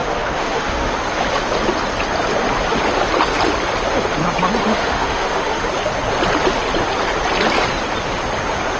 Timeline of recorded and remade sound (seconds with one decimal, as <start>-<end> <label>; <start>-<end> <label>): 0.0-0.9 remade; 0.9-4.6 recorded; 4.6-5.6 remade; 5.6-8.8 recorded